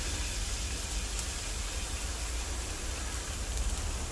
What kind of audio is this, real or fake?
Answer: real